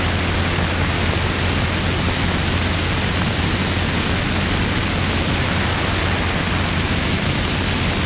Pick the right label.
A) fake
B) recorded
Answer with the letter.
B